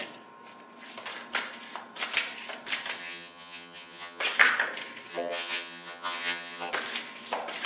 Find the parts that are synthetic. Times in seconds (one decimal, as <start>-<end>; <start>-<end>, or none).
3.0-4.2; 5.1-6.7